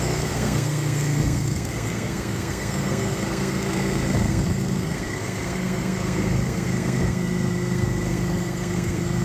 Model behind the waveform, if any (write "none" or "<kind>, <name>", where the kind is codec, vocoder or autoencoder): codec, SNAC